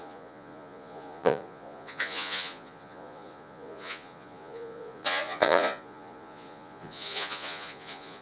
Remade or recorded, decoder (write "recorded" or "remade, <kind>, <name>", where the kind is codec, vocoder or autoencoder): remade, vocoder, Vocos